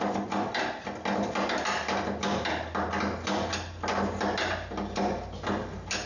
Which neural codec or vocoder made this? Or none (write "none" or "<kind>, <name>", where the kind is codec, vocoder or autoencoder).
none